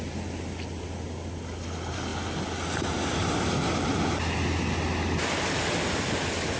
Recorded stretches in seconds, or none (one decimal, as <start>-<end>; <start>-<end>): 0.0-6.6